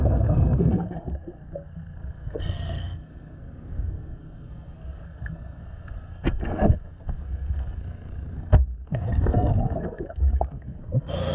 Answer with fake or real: fake